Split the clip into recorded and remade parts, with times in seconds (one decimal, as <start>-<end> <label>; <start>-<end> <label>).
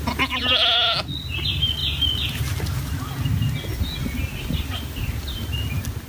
0.0-6.1 recorded